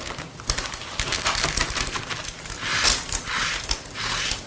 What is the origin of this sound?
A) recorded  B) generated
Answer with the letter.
A